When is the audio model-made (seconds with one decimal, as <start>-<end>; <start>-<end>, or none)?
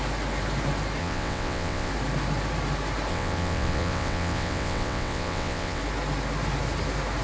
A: 1.0-1.9; 3.1-5.8